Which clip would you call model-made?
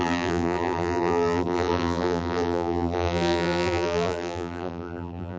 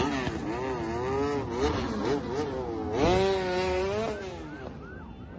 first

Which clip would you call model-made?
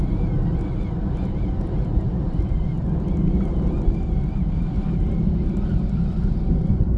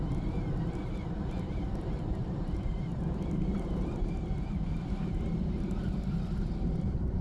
second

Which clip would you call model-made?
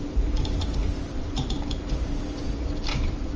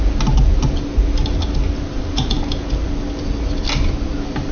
first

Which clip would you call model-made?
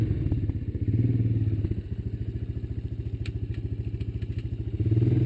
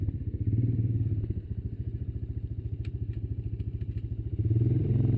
second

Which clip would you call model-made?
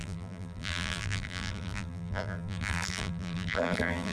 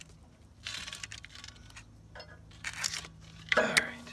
first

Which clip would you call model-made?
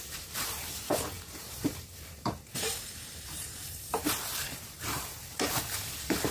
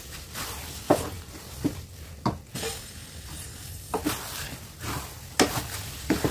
first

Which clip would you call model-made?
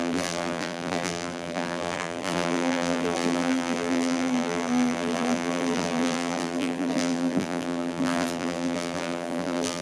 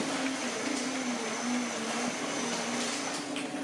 first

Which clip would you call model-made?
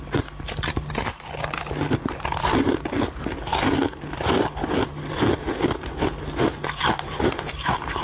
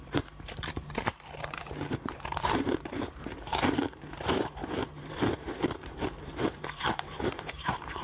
second